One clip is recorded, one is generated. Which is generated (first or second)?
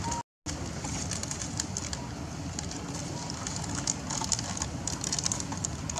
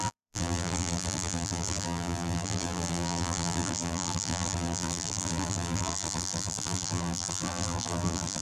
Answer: second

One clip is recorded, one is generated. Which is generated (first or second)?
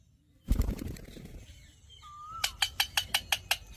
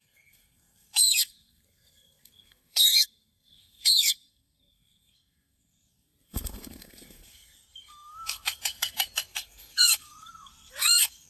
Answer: second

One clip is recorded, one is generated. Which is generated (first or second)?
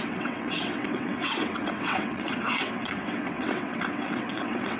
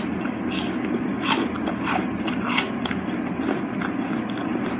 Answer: first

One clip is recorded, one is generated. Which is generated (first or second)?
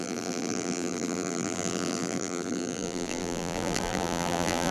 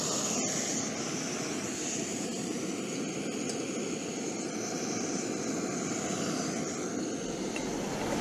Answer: first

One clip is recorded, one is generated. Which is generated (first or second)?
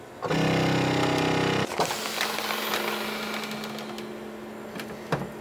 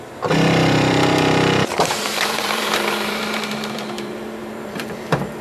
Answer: second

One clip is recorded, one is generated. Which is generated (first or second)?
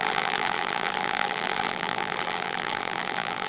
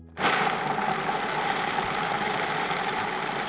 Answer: first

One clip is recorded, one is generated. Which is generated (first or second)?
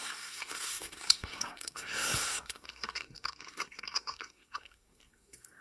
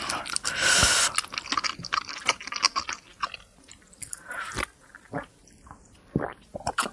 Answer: first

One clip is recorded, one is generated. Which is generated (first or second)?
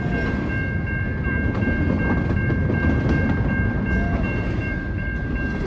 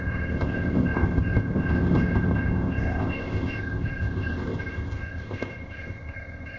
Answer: second